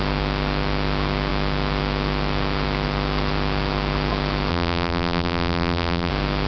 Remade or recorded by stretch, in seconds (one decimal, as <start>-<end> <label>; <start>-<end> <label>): 0.0-4.5 recorded; 4.5-6.1 remade; 6.1-6.5 recorded